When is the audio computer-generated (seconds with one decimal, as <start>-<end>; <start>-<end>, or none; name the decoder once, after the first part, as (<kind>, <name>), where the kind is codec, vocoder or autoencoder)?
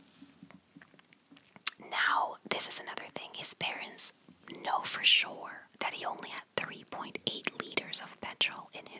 none